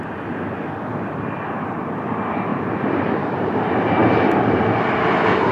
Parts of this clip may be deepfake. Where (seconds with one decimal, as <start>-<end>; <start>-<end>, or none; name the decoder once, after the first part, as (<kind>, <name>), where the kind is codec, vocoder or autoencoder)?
none